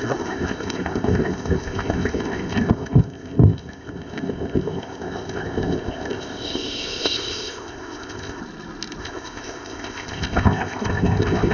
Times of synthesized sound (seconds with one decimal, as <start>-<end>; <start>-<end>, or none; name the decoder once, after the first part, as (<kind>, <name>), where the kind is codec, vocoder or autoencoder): 0.0-8.4 (codec, ZipCodec); 9.0-11.5